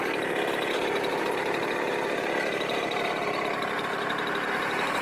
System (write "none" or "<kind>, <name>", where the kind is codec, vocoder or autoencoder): none